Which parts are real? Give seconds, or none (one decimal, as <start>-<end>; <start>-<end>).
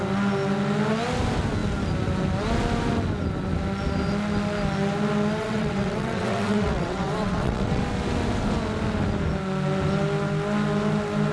0.0-5.4; 7.8-11.3